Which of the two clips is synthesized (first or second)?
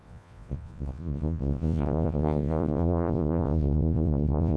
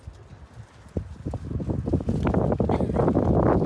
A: first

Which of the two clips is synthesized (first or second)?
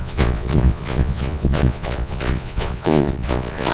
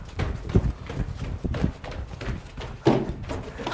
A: first